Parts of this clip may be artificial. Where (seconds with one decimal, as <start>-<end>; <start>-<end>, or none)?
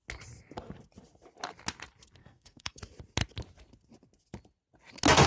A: 2.2-2.8